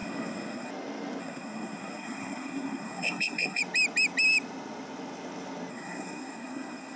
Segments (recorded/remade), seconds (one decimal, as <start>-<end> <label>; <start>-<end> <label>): 0.0-0.7 remade; 0.7-1.2 recorded; 1.2-3.6 remade; 3.6-5.7 recorded; 5.7-7.0 remade